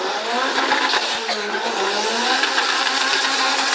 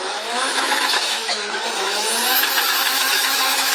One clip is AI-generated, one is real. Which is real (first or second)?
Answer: first